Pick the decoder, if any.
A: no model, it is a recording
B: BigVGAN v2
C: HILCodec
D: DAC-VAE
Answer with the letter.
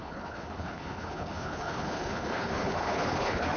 C